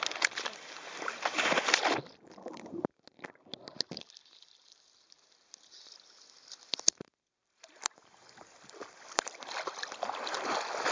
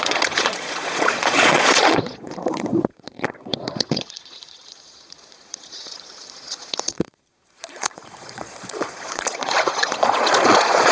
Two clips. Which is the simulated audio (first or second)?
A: second